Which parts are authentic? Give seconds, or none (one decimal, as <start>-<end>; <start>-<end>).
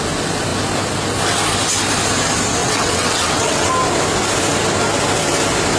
0.0-2.6; 3.7-5.8